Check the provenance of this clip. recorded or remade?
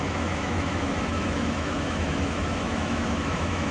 remade